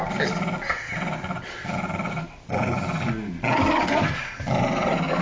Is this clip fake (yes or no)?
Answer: no